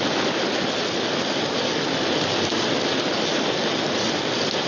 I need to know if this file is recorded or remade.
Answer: recorded